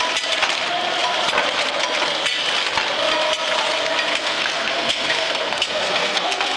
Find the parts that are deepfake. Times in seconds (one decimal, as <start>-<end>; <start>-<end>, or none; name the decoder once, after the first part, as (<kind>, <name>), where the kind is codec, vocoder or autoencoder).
4.1-6.6 (codec, SNAC)

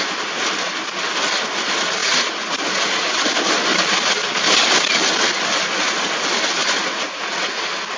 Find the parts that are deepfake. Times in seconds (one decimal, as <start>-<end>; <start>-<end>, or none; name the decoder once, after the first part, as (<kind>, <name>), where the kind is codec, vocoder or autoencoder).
2.0-2.5 (vocoder, Vocos); 6.6-7.6

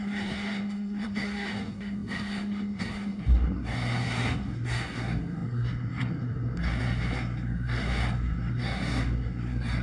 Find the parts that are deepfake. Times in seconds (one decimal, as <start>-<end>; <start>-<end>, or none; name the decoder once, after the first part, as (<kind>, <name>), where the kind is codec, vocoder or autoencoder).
0.0-9.8 (codec, SNAC)

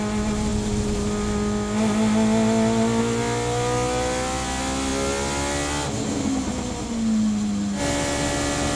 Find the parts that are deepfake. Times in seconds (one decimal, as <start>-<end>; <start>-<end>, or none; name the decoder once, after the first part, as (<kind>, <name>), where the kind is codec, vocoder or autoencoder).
none

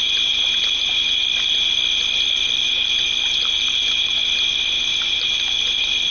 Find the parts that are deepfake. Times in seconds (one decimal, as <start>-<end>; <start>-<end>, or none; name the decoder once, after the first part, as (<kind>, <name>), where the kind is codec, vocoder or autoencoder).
0.0-1.2 (vocoder, BigVGAN v2); 3.4-4.2; 4.8-6.1